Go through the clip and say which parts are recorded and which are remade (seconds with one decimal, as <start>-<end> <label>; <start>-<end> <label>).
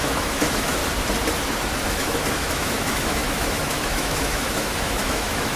0.0-0.8 remade; 0.8-1.9 recorded; 1.9-5.6 remade